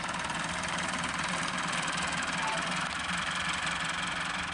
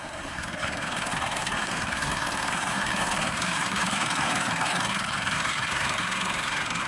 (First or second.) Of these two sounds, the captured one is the first